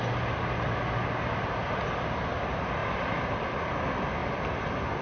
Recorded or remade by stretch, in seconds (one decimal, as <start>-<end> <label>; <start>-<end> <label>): 0.0-2.8 recorded; 2.8-3.6 remade; 3.6-5.0 recorded